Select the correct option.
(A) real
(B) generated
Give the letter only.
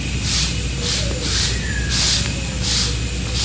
A